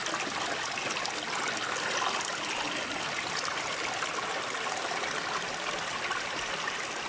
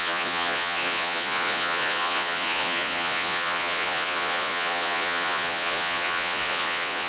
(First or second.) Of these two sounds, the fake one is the second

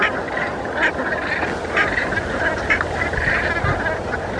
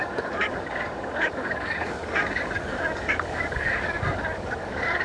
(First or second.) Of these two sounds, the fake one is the second